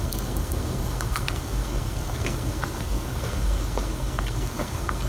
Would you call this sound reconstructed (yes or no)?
yes